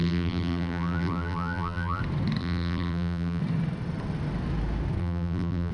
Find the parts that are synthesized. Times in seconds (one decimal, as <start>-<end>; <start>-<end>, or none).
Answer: 0.0-2.0; 2.4-3.4; 5.0-5.7